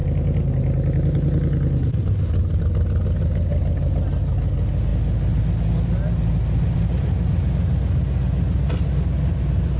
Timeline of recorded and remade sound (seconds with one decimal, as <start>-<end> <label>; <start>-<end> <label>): 0.0-9.8 recorded